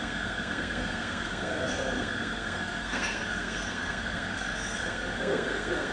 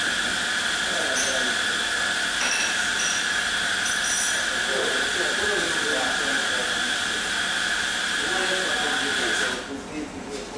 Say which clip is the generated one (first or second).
first